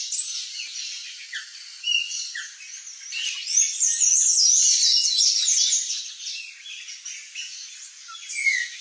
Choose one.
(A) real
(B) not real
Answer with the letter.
A